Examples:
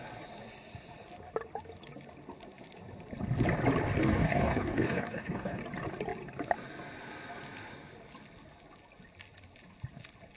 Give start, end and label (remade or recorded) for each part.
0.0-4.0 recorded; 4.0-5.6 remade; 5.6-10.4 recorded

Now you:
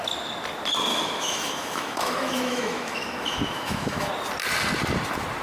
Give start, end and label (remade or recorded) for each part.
0.0-0.9 recorded; 0.9-4.1 remade; 4.1-5.4 recorded

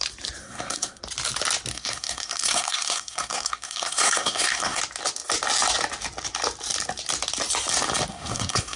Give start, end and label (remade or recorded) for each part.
0.0-0.4 recorded; 0.4-1.0 remade; 1.0-1.7 recorded; 1.7-4.8 remade; 4.8-8.1 recorded; 8.1-8.8 remade